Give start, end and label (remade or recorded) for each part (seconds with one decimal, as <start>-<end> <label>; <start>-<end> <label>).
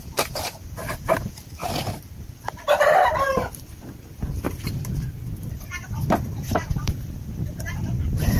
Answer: 0.0-1.6 remade; 1.6-5.5 recorded; 5.5-8.4 remade